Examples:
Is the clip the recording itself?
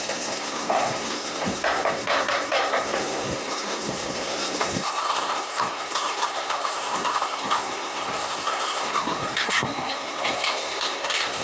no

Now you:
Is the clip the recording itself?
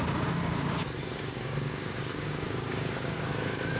no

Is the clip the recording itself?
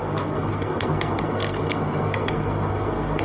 no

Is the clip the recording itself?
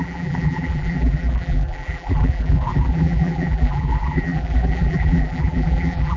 no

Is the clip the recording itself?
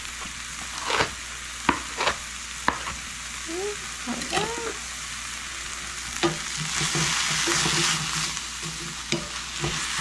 yes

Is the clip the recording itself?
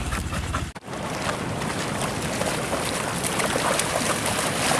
yes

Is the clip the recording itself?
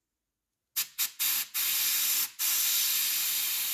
yes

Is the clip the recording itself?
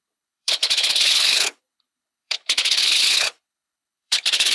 no